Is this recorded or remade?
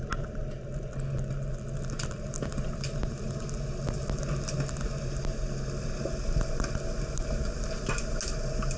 recorded